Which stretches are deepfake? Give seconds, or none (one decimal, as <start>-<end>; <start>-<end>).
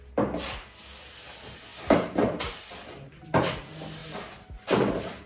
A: none